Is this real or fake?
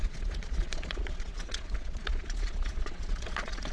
fake